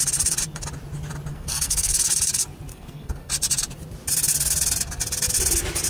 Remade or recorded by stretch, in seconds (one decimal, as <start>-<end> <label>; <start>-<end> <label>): 0.0-1.3 recorded; 1.3-1.9 remade; 1.9-2.7 recorded; 2.7-3.3 remade; 3.3-5.9 recorded